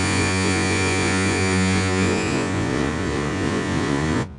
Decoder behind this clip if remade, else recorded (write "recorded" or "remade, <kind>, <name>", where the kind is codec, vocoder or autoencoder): remade, vocoder, Vocos